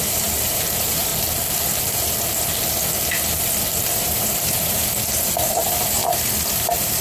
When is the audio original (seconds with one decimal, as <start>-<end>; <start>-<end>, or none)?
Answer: 1.1-3.8; 4.8-5.5; 6.0-6.5